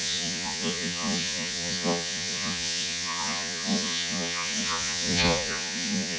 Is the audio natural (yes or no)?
no